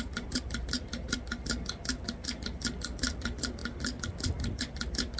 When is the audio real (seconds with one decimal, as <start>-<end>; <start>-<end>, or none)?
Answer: 0.0-5.2